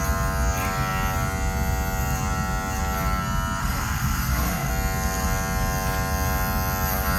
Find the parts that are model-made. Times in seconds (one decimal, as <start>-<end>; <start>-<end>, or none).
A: 3.6-4.7